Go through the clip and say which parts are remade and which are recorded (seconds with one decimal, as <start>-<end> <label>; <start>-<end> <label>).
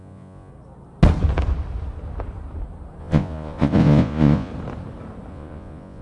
0.0-0.5 remade; 0.5-3.0 recorded; 3.0-4.5 remade; 4.5-5.3 recorded; 5.3-6.0 remade